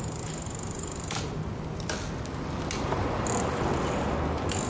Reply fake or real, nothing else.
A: real